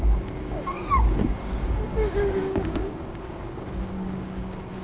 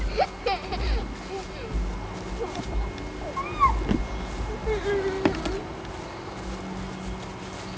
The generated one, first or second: first